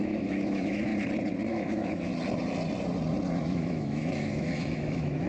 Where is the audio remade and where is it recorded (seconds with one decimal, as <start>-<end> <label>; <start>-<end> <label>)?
0.0-0.9 remade; 0.9-1.5 recorded; 1.5-2.1 remade; 2.1-3.4 recorded; 3.4-5.3 remade